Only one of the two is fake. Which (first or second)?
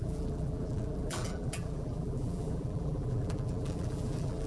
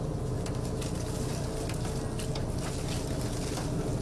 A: first